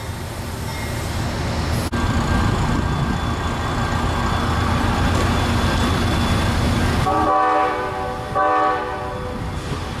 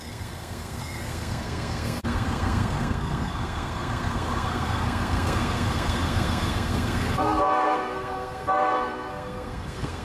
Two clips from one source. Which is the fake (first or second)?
second